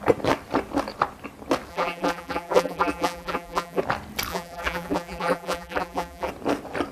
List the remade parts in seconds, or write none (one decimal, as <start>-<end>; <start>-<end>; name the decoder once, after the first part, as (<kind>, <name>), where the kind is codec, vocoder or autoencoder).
1.7-3.8 (vocoder, BigVGAN v2); 4.3-6.3